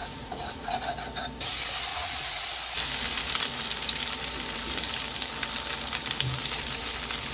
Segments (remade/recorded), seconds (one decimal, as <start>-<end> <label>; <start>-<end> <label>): 0.0-0.8 remade; 0.8-1.9 recorded; 1.9-2.4 remade; 2.4-7.3 recorded